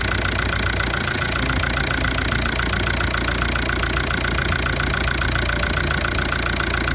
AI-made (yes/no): no